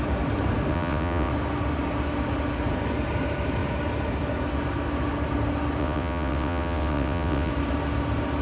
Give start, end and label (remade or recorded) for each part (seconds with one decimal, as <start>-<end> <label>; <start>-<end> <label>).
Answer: 0.0-0.7 recorded; 0.7-1.3 remade; 1.3-5.8 recorded; 5.8-7.5 remade; 7.5-8.4 recorded